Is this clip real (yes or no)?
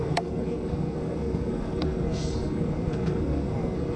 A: no